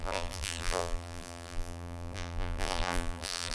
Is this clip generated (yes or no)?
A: yes